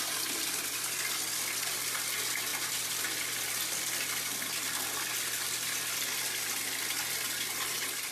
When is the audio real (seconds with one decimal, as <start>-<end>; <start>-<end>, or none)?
0.0-8.1

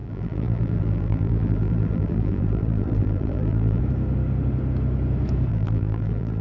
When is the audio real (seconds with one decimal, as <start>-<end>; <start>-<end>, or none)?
3.8-5.5

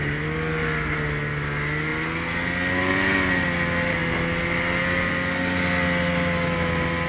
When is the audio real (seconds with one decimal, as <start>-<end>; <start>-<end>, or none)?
0.0-7.1

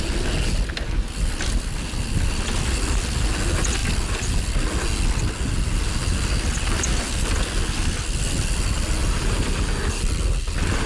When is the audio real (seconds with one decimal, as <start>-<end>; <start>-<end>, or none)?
0.0-9.0; 10.0-10.9

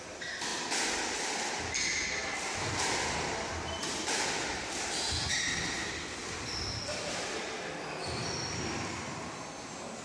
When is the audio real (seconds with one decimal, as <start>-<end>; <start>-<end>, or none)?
0.0-10.0

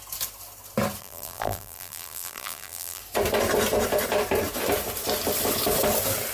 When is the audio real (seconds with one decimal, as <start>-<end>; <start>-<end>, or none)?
0.0-1.0; 3.0-6.3

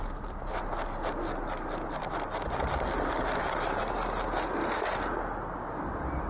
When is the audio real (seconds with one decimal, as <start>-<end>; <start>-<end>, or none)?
0.0-2.0; 3.8-6.3

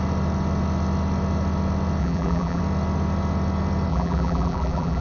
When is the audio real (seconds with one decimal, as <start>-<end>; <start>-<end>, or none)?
0.0-2.0; 2.6-3.9